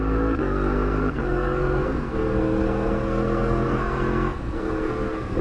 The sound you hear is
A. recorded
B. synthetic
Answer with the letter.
B